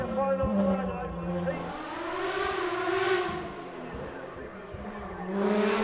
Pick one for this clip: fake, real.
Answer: real